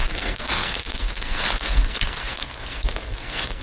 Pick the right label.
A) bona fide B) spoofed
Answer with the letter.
B